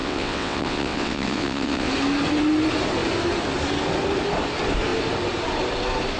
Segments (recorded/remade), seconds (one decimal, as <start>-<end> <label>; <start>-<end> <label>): 0.0-1.9 remade; 1.9-6.2 recorded